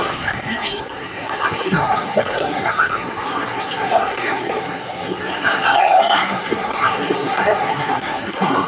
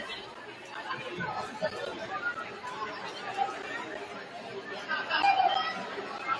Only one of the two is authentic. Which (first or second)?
second